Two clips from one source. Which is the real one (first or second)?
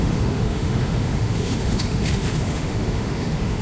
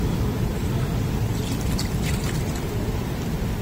second